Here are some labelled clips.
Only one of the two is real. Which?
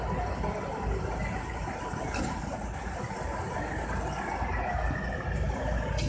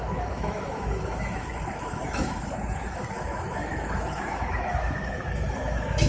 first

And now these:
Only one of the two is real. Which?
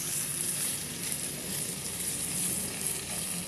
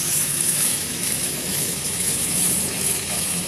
first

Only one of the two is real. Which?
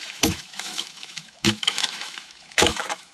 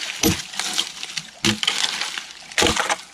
second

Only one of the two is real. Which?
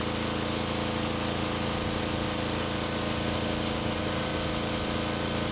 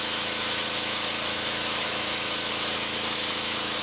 first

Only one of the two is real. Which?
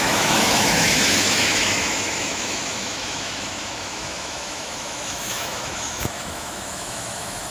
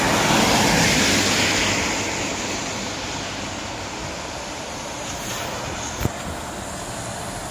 second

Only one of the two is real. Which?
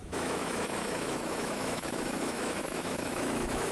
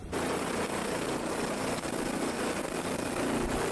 second